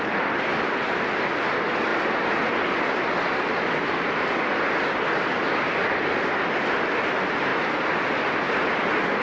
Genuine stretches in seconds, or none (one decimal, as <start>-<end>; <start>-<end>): 0.0-9.2